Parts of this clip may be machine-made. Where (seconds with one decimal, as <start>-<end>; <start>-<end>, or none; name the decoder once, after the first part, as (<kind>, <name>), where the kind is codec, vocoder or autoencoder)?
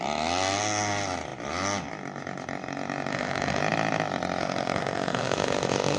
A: 3.1-3.6 (autoencoder, DAC-VAE); 4.4-6.0